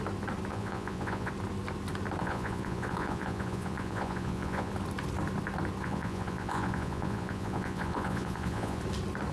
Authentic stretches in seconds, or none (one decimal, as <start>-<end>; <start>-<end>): 0.0-0.5; 1.3-2.2; 4.7-5.8; 8.8-9.3